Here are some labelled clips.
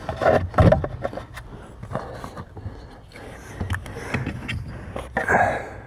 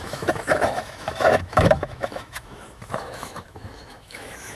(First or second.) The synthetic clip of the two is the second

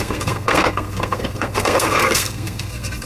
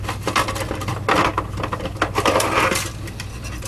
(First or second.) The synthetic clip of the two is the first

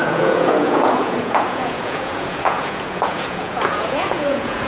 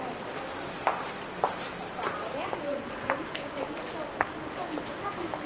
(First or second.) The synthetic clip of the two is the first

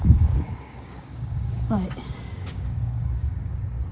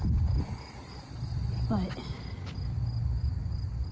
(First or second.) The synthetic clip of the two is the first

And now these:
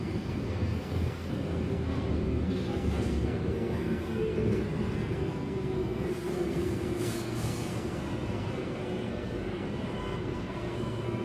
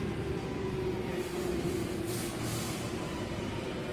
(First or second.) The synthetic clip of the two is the first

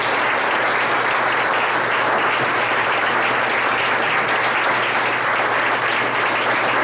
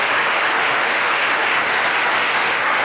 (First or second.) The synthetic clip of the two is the second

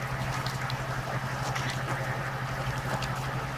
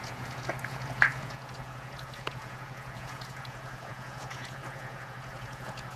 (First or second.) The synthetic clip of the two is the second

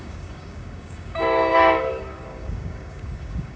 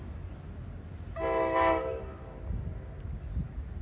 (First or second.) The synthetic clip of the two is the first